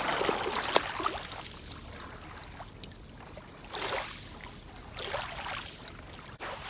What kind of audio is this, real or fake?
real